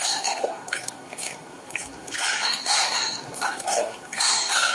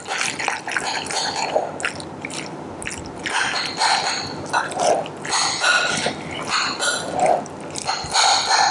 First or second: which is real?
second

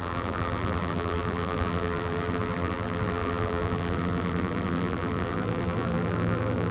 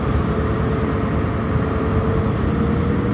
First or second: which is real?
second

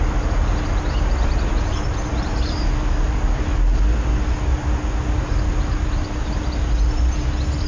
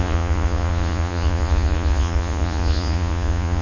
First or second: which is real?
first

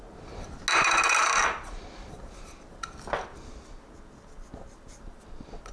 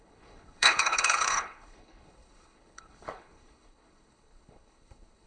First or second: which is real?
first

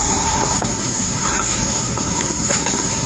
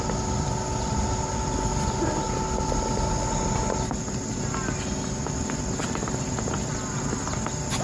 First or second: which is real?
second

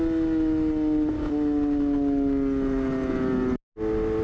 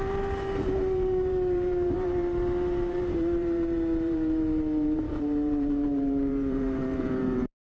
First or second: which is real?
first